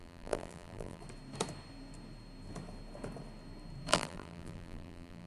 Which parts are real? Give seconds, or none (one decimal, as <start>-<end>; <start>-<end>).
1.0-3.9